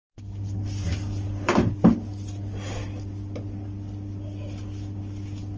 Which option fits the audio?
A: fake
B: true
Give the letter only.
B